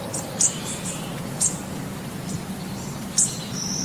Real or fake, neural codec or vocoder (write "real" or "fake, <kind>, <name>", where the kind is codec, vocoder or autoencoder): fake, vocoder, BigVGAN v2